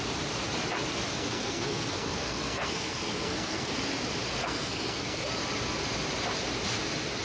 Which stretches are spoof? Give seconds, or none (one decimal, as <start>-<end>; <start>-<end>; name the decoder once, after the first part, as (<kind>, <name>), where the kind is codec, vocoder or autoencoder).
1.1-3.7 (codec, SNAC); 4.4-5.3